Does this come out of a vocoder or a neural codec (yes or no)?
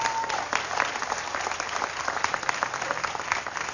no